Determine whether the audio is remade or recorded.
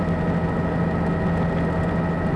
recorded